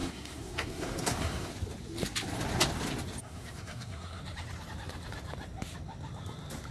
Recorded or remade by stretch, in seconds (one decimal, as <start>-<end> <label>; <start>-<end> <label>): 0.0-1.5 remade; 1.5-3.2 recorded; 3.2-4.2 remade; 4.2-6.7 recorded

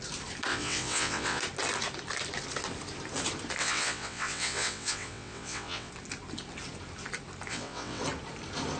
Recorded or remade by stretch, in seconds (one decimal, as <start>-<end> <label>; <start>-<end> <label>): 0.0-0.5 recorded; 0.5-1.4 remade; 1.4-3.6 recorded; 3.6-5.9 remade; 5.9-7.5 recorded; 7.5-8.0 remade; 8.0-8.8 recorded

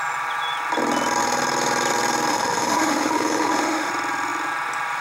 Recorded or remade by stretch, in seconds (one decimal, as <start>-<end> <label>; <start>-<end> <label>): 0.0-2.3 recorded; 2.3-3.9 remade; 3.9-5.0 recorded

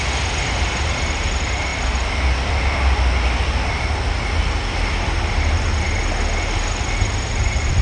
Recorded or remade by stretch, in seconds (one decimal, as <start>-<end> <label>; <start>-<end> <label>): 0.0-7.8 recorded

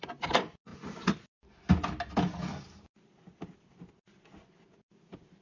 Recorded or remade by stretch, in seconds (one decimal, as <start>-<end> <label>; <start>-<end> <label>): 0.0-5.4 recorded